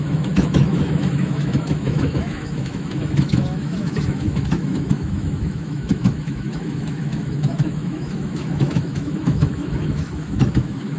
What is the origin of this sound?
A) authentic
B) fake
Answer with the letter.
B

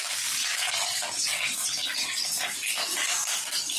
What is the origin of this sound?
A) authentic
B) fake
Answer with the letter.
B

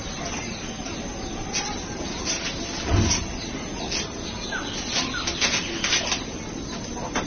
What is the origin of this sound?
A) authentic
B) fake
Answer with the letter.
A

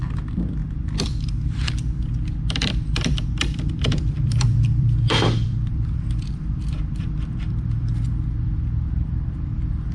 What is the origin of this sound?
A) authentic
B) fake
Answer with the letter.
B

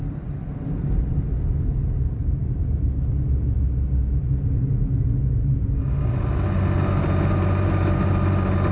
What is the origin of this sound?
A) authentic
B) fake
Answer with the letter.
A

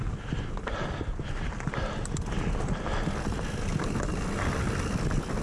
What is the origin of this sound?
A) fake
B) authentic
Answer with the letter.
B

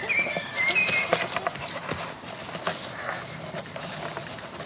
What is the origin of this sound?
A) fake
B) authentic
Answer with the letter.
B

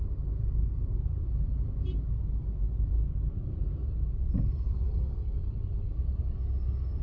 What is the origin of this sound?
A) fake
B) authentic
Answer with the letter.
B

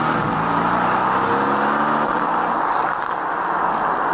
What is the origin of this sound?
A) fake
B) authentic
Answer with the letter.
B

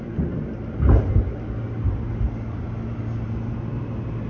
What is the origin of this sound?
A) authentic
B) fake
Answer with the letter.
A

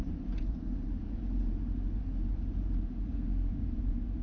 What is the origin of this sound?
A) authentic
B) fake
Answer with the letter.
B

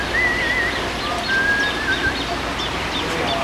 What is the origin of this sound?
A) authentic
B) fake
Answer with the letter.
A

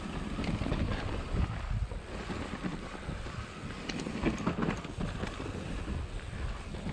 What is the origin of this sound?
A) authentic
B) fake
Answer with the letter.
A